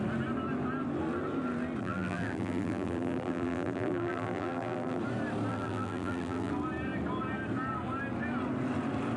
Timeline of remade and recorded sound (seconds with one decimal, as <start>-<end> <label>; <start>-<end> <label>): 0.0-1.8 recorded; 1.8-5.0 remade; 5.0-5.5 recorded; 5.5-6.5 remade; 6.5-9.2 recorded